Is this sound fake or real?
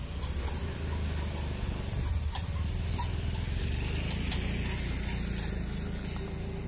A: real